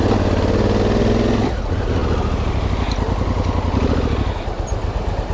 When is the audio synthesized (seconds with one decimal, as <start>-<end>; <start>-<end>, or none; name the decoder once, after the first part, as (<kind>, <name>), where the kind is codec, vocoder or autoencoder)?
none